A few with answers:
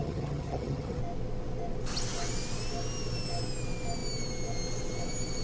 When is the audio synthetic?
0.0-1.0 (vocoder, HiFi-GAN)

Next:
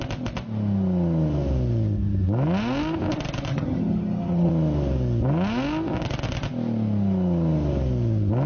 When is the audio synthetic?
3.5-4.5 (vocoder, HiFi-GAN)

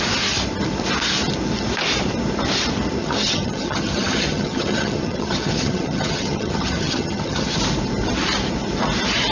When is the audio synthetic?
3.0-7.6 (vocoder, HiFi-GAN)

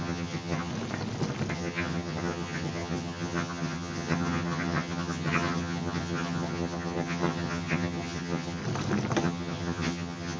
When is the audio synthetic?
0.0-0.7 (vocoder, HiFi-GAN); 1.5-8.6; 9.2-10.4

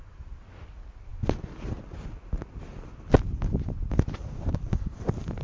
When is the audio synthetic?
none

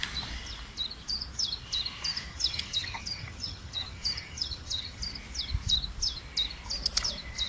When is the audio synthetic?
2.3-5.0 (vocoder, HiFi-GAN)

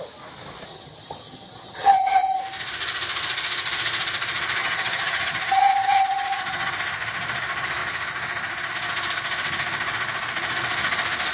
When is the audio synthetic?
0.7-2.4 (vocoder, HiFi-GAN); 4.6-6.7